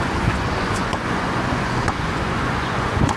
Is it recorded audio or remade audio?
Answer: remade